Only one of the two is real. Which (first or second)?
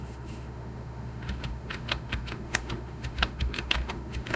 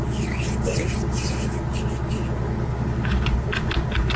second